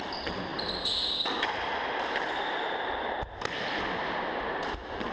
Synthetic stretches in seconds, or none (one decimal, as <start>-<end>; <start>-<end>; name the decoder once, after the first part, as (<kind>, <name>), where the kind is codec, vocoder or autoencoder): none